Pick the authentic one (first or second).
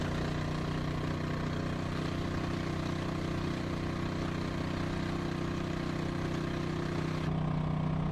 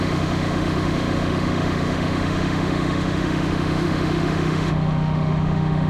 first